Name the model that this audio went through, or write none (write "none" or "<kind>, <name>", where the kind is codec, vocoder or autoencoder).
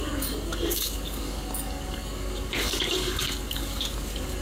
codec, DAC